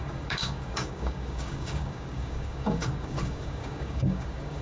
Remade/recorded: remade